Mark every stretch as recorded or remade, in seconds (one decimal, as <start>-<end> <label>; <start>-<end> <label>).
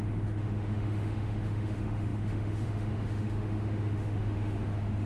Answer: 0.0-5.1 remade